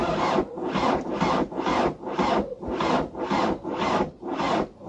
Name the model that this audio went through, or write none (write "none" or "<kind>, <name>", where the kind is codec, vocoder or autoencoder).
none